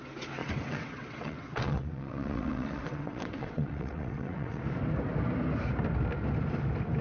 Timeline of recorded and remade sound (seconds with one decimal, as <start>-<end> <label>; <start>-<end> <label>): 0.0-0.4 recorded; 0.4-4.6 remade; 4.6-7.0 recorded